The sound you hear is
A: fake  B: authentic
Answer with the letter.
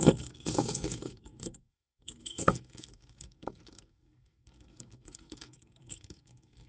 A